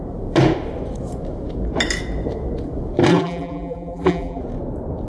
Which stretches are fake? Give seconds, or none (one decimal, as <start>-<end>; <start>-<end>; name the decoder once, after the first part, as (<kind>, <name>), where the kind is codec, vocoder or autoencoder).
3.1-4.4 (vocoder, BigVGAN v2)